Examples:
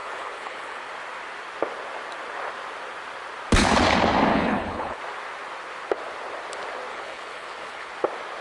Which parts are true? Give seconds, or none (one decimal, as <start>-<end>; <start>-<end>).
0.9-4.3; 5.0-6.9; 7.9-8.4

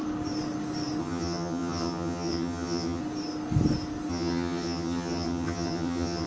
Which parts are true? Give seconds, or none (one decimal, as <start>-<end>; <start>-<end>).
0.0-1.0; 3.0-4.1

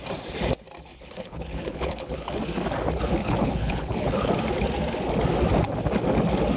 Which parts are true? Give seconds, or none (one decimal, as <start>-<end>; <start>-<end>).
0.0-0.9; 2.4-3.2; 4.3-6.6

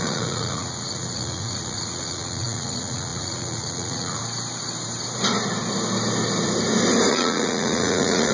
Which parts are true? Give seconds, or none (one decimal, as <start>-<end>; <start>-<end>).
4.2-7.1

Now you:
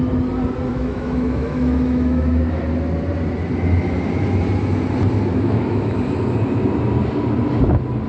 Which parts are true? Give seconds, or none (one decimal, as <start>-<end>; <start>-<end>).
0.0-0.7; 2.6-5.3; 5.9-8.1